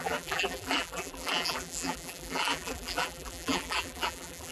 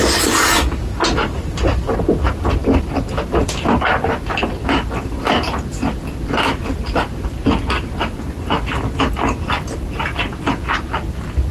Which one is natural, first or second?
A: second